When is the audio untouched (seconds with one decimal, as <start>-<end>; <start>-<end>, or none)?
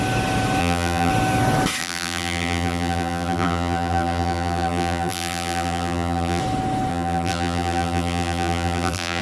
0.0-0.6; 1.1-1.8; 6.4-6.9